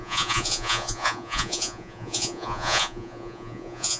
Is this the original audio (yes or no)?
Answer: no